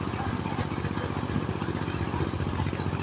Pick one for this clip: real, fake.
real